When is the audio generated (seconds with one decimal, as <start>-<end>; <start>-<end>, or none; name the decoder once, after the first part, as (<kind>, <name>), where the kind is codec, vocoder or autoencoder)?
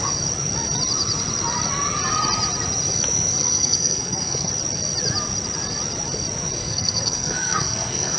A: 3.4-4.5 (codec, SNAC); 6.6-8.2